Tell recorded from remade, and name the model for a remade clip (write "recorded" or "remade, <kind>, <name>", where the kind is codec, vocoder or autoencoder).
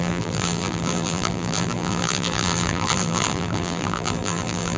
remade, vocoder, BigVGAN v2